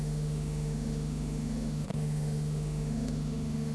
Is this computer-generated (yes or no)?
yes